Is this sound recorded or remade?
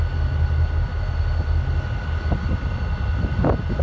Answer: recorded